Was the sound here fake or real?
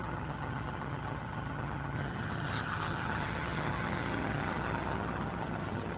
fake